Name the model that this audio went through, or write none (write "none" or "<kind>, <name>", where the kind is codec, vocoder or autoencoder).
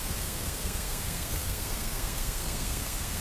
codec, SNAC